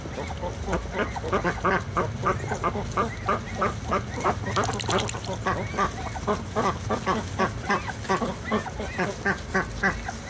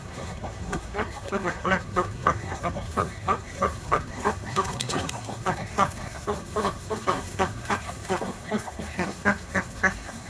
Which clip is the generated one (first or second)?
second